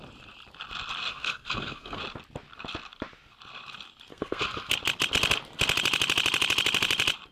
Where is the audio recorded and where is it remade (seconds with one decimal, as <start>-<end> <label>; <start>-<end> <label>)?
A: 0.0-1.1 recorded; 1.1-2.0 remade; 2.0-4.1 recorded; 4.1-4.7 remade; 4.7-7.3 recorded